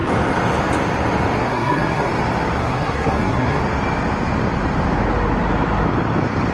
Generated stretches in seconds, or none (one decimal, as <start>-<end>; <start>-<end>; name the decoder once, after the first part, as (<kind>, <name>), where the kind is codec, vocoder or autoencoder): 1.4-2.1 (codec, SNAC); 2.6-3.6